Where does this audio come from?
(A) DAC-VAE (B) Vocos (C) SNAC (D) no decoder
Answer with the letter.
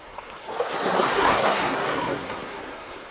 C